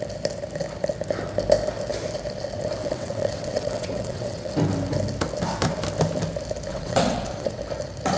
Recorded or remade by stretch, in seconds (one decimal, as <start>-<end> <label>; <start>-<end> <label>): 0.0-2.8 recorded; 2.8-4.5 remade; 4.5-6.7 recorded; 6.7-7.6 remade; 7.6-8.2 recorded

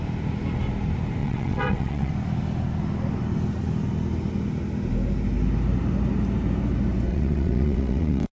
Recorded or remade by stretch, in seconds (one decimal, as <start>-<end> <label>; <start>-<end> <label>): 0.0-1.2 recorded; 1.2-2.1 remade; 2.1-7.1 recorded; 7.1-8.3 remade

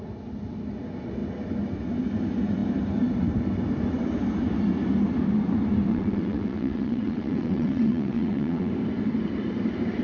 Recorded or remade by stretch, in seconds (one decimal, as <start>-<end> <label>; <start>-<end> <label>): 0.0-5.9 recorded; 5.9-8.7 remade; 8.7-10.0 recorded

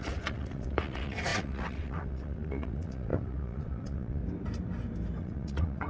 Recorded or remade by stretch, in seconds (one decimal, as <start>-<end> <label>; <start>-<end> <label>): 0.0-4.2 remade; 4.2-5.2 recorded; 5.2-5.9 remade

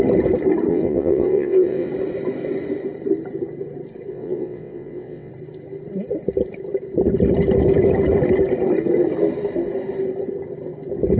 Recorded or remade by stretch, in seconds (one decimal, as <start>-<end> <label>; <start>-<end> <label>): 0.0-0.7 recorded; 0.7-1.9 remade; 1.9-4.1 recorded; 4.1-5.3 remade; 5.3-11.2 recorded

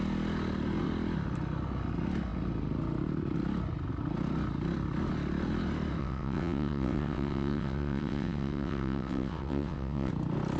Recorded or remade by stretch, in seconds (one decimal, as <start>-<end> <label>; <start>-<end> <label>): 0.0-6.0 recorded; 6.0-10.1 remade; 10.1-10.6 recorded

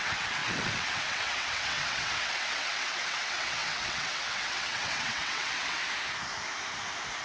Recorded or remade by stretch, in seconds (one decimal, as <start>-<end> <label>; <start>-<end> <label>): 0.0-5.8 remade; 5.8-7.2 recorded

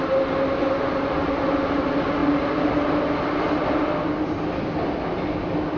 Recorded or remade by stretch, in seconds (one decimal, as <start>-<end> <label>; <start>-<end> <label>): 0.0-5.8 recorded